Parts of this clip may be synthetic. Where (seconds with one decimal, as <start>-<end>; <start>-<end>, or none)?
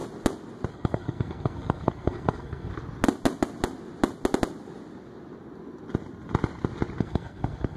0.7-2.7; 7.0-7.8